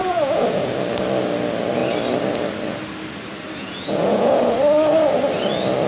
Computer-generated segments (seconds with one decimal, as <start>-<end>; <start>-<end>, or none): 0.0-0.7; 3.6-4.6